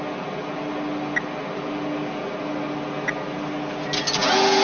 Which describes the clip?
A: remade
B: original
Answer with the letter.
B